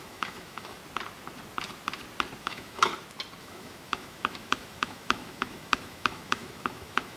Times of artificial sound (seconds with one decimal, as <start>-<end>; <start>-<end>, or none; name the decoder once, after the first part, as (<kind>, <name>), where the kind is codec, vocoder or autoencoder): 0.0-0.8 (autoencoder, DAC-VAE); 2.4-2.9; 3.4-7.2